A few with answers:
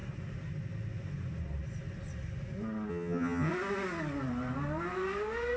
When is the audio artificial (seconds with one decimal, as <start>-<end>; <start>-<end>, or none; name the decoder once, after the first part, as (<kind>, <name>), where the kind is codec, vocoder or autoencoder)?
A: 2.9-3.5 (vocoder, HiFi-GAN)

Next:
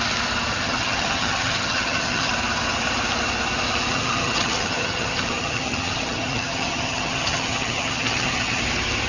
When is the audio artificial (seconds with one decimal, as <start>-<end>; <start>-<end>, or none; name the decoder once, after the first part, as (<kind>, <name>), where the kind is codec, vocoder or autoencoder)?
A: 0.5-2.3 (vocoder, HiFi-GAN); 3.9-8.6

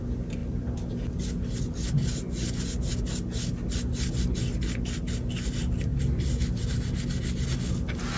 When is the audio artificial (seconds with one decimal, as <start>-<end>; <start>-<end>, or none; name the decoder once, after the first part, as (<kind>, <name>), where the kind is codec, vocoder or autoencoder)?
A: none